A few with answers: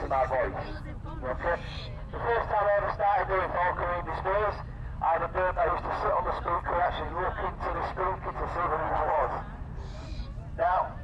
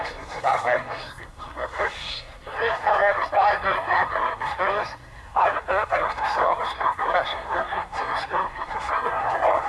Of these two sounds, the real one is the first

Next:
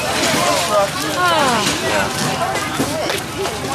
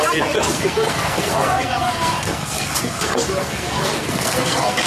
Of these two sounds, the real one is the first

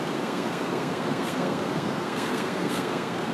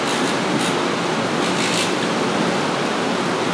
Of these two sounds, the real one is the second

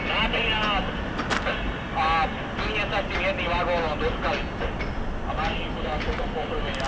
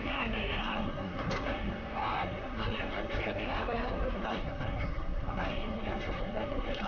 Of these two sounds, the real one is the first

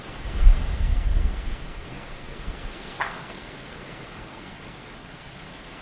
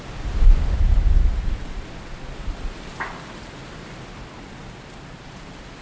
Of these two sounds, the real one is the second